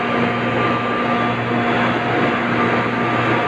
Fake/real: real